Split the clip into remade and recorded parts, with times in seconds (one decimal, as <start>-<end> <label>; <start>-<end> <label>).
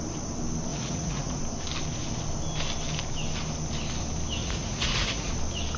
0.0-0.7 recorded; 0.7-1.4 remade; 1.4-4.4 recorded; 4.4-5.3 remade; 5.3-5.8 recorded